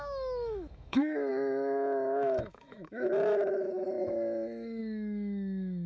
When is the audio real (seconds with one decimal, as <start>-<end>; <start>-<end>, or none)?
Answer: none